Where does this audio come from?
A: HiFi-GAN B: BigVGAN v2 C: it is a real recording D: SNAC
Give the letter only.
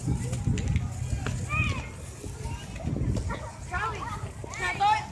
C